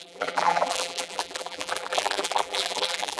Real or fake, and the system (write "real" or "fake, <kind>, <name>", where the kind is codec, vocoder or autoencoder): fake, vocoder, BigVGAN v2